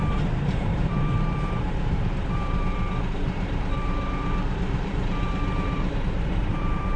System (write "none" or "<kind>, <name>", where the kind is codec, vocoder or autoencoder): vocoder, BigVGAN v2